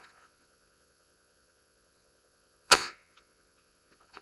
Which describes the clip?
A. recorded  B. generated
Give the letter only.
B